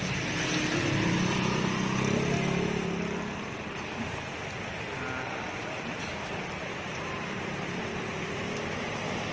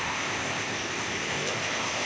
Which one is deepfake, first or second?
second